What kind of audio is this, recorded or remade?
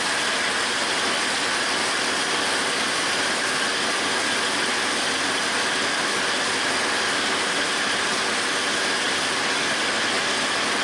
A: recorded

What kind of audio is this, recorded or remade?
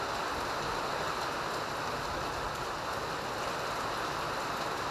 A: recorded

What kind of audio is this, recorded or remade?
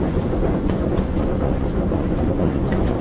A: remade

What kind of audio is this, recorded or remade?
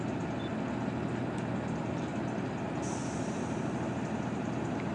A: recorded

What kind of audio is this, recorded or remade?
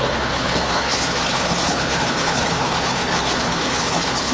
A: remade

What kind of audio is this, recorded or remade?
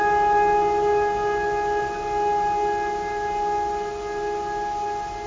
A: recorded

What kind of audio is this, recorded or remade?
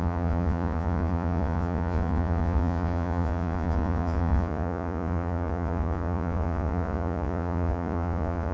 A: remade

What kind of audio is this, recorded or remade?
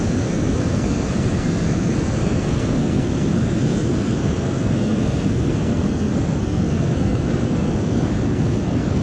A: remade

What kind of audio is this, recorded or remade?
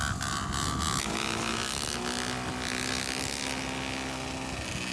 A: recorded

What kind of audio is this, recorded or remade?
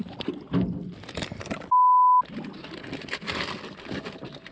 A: recorded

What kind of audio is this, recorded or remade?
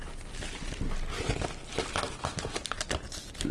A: recorded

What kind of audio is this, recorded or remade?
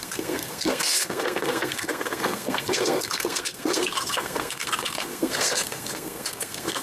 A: remade